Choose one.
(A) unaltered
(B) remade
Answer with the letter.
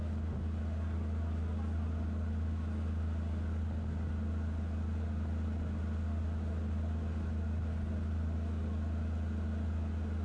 A